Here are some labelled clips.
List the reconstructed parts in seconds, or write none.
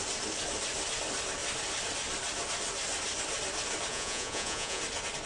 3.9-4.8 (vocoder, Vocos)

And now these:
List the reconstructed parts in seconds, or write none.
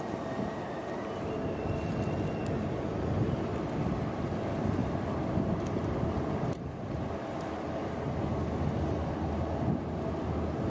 none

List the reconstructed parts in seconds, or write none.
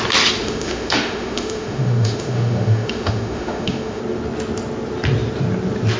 0.4-4.0 (autoencoder, DAC-VAE)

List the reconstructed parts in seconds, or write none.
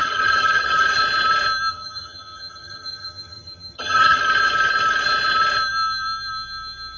0.0-1.0 (vocoder, HiFi-GAN); 1.7-4.2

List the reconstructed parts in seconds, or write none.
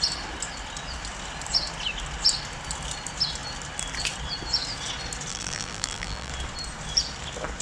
5.3-6.3 (vocoder, BigVGAN v2)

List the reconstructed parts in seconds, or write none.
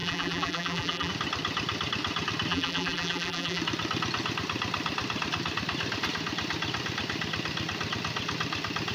0.0-1.1 (vocoder, BigVGAN v2); 2.5-3.6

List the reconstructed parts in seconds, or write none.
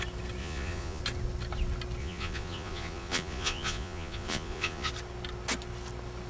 0.4-1.0 (vocoder, Vocos); 2.0-4.9